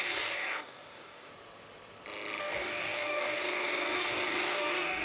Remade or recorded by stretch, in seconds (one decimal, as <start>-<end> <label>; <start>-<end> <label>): 0.0-1.3 remade; 1.3-2.4 recorded; 2.4-5.0 remade